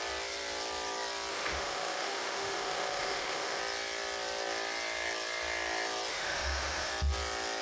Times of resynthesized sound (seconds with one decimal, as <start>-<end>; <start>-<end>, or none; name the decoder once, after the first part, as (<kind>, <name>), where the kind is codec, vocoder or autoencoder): 1.3-3.6 (autoencoder, DAC-VAE); 6.1-6.9